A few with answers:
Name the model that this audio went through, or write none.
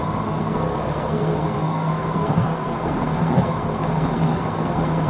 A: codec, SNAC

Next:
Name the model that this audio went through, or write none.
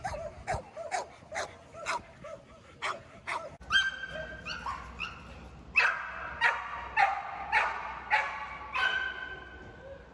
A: none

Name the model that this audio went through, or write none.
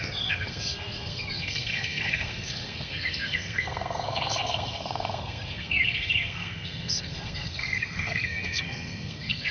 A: codec, SNAC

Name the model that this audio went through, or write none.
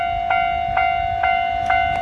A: none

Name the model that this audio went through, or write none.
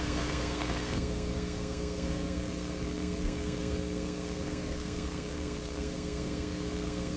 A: codec, SNAC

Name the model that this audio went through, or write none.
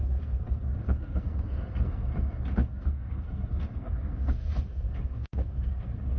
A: codec, SNAC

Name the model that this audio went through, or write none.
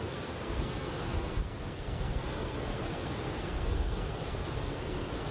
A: codec, SNAC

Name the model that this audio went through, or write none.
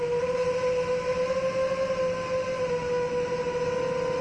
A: none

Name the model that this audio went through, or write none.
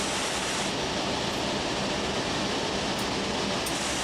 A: none